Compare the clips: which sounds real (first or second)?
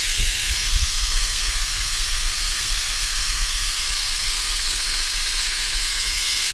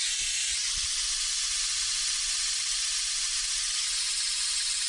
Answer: second